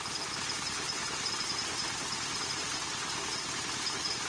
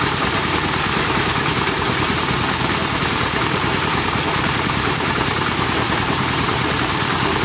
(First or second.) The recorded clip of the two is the first